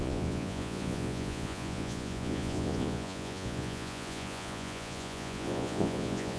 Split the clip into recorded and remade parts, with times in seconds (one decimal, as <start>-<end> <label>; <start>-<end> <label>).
0.0-6.4 remade

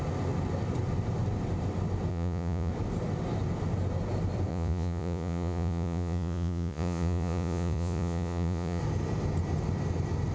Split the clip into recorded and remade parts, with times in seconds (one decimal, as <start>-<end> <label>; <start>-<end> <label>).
0.0-2.1 recorded; 2.1-2.7 remade; 2.7-4.5 recorded; 4.5-8.8 remade; 8.8-10.3 recorded

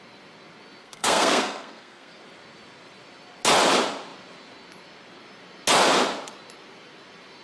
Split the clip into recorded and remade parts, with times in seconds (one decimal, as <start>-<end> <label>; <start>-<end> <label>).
0.0-0.8 recorded; 0.8-2.1 remade; 2.1-7.4 recorded

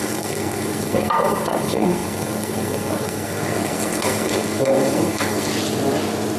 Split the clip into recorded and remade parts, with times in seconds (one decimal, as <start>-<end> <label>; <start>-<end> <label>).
0.0-5.5 remade; 5.5-6.4 recorded